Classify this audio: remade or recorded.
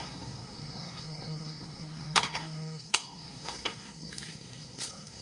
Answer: remade